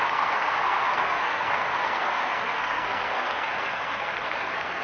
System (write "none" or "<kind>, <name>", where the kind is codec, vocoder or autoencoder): codec, SNAC